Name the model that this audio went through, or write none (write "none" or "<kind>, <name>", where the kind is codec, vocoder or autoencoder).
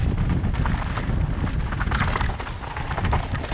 none